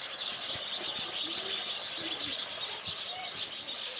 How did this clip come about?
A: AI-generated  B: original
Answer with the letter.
B